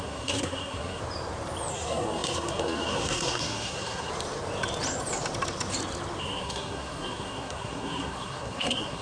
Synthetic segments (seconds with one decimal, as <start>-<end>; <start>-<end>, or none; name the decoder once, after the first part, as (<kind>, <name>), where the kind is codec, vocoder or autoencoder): 0.0-1.0 (codec, SNAC); 1.7-4.1; 6.2-9.0